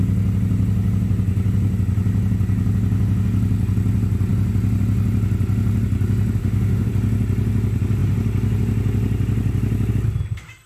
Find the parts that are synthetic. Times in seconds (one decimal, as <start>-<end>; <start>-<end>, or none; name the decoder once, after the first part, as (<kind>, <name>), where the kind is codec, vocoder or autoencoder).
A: 6.4-6.9 (autoencoder, DAC-VAE)